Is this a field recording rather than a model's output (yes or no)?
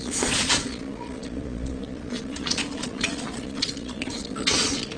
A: no